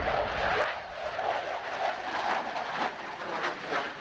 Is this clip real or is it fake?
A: real